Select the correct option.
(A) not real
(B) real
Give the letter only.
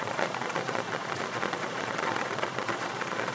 A